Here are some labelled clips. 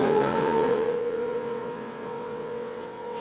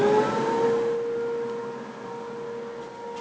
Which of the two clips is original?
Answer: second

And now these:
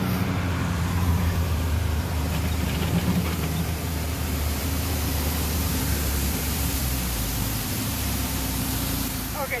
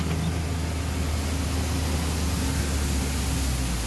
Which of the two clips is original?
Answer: second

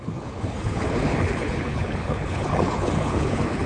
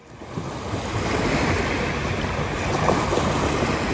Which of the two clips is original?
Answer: second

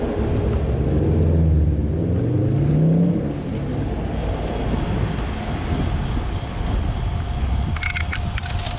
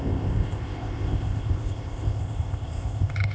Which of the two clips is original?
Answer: first